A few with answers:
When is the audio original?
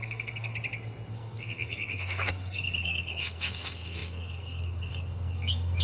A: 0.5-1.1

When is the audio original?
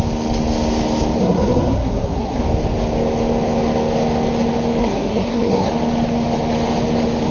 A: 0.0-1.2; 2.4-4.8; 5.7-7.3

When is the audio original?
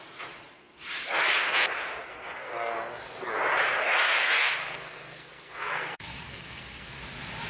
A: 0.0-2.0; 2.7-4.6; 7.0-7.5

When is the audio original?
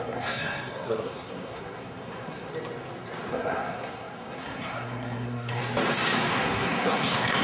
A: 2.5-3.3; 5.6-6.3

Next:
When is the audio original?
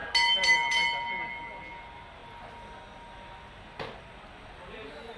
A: 0.0-5.2